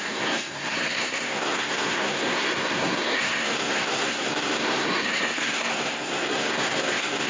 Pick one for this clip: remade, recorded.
remade